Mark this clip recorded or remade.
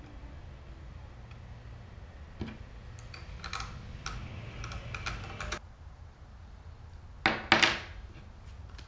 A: recorded